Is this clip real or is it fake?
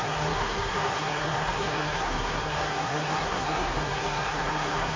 fake